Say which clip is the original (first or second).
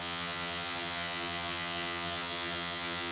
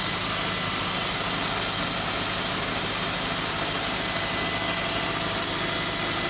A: second